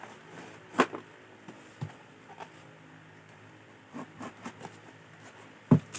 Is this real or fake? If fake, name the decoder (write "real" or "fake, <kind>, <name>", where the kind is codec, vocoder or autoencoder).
real